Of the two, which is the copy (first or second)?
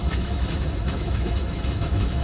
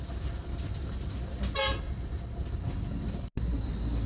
first